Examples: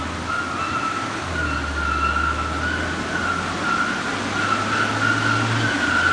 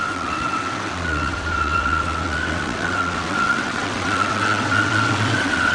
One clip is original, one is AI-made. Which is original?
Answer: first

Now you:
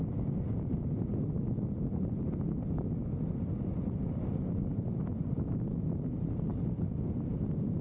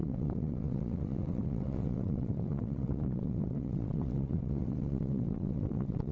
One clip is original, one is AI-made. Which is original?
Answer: first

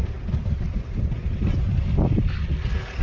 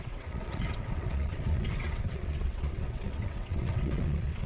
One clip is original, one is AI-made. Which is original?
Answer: first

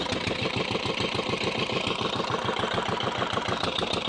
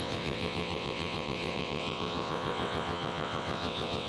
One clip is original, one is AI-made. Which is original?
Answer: first